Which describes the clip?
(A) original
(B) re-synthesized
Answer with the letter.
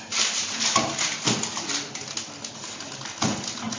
A